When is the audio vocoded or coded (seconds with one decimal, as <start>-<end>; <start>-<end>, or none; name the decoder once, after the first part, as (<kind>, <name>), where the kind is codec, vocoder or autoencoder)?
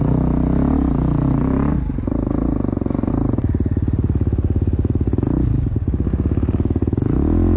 6.8-7.6 (autoencoder, DAC-VAE)